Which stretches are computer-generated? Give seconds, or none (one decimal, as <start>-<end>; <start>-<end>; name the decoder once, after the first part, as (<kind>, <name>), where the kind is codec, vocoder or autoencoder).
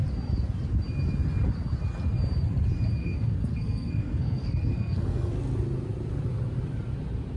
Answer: 3.0-5.3 (codec, SNAC)